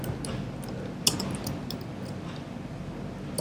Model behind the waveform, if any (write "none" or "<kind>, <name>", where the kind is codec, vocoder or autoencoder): none